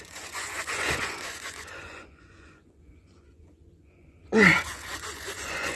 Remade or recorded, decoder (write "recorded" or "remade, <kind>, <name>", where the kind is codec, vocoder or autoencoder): remade, vocoder, Vocos